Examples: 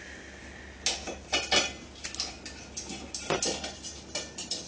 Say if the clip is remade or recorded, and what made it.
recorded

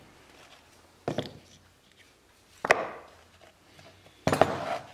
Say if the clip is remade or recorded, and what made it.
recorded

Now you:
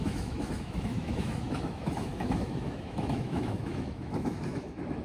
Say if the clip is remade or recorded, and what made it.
remade, autoencoder, DAC-VAE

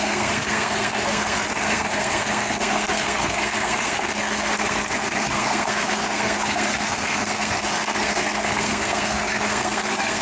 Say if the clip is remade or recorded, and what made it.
remade, codec, SNAC